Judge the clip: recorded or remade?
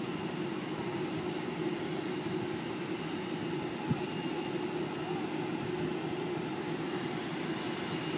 recorded